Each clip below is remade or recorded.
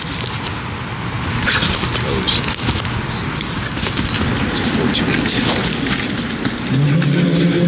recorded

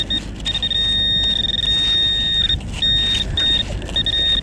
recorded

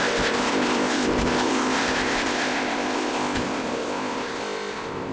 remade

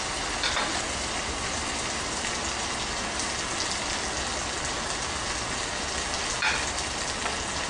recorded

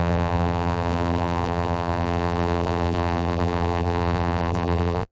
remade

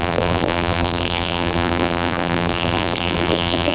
remade